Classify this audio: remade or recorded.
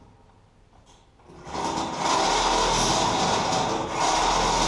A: recorded